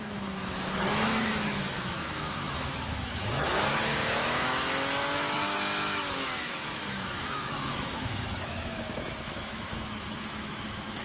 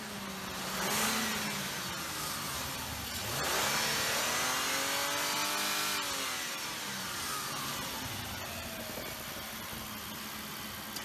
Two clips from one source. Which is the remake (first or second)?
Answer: first